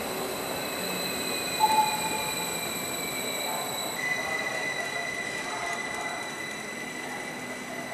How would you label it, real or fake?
real